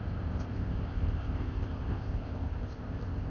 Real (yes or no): no